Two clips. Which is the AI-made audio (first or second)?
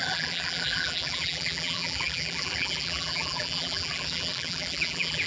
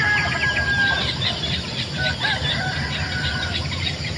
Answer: first